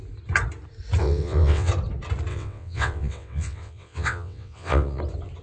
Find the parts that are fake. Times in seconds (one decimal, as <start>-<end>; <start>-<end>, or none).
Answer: 1.0-1.7; 2.3-5.0